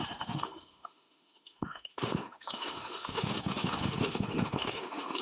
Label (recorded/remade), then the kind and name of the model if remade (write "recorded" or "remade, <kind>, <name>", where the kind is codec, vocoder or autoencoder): remade, autoencoder, DAC-VAE